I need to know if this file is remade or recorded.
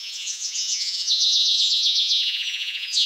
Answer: remade